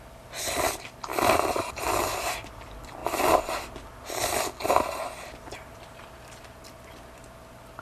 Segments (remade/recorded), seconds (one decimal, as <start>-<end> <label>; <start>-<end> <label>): 0.0-7.8 recorded